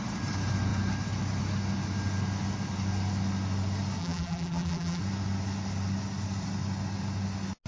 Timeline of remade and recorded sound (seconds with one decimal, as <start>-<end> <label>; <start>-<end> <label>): 0.0-4.0 recorded; 4.0-5.0 remade; 5.0-7.7 recorded